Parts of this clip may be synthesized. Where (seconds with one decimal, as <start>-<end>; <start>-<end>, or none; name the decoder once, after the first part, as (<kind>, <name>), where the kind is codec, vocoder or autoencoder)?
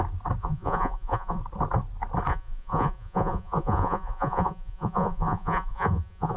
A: 0.4-1.4 (vocoder, Vocos); 2.3-6.4